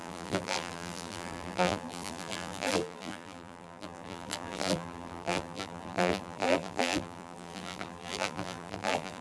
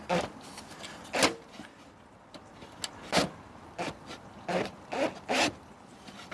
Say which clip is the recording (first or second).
second